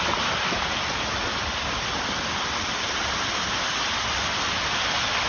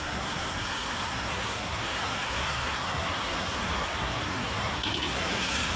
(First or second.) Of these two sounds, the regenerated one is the second